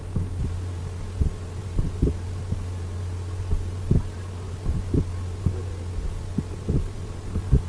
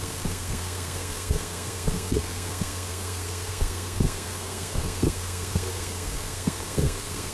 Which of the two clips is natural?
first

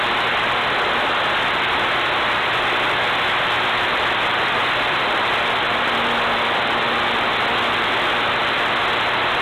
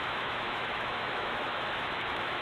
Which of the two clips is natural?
first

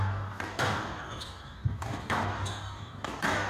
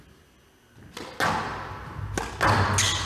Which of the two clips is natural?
second